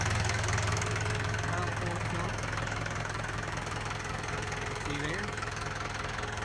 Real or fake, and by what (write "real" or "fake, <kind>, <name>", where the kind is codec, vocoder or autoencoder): fake, codec, DAC